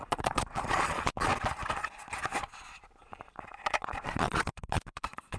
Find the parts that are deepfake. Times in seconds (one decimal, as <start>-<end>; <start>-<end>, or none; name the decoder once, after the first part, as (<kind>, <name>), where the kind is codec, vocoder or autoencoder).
0.0-1.3 (vocoder, Vocos); 3.0-5.4